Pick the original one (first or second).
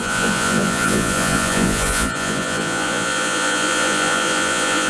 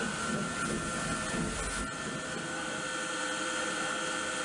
second